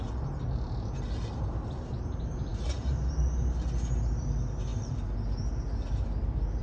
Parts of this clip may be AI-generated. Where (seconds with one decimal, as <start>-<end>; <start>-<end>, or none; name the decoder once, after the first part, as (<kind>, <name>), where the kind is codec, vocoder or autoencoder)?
none

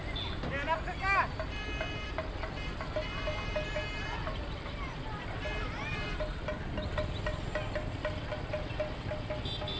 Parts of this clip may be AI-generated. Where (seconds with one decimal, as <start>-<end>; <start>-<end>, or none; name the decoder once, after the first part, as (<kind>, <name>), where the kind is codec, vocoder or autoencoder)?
none

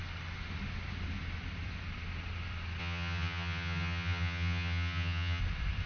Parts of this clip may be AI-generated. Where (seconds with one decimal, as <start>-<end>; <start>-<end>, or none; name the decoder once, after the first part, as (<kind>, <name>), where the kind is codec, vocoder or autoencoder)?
2.8-5.4 (vocoder, HiFi-GAN)

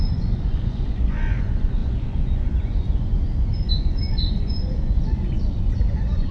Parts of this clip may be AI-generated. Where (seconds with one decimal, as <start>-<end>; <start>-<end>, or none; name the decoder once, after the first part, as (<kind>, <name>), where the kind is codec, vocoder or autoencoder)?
0.0-6.3 (vocoder, Vocos)

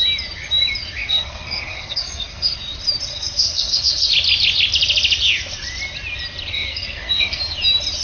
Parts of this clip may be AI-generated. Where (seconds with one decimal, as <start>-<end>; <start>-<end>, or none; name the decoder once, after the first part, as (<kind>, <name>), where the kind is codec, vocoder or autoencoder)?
1.0-2.6 (codec, SNAC); 3.1-4.1; 6.5-7.4

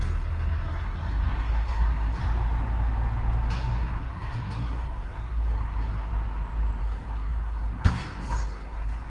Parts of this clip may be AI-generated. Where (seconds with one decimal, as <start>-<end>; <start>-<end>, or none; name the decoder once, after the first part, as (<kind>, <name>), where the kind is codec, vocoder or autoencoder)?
0.0-2.2 (codec, SNAC); 3.5-6.1; 6.8-9.1

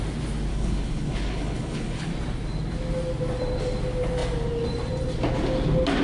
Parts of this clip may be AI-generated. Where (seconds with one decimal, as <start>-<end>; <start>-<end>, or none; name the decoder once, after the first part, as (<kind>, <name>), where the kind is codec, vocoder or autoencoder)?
0.5-2.1 (codec, HILCodec)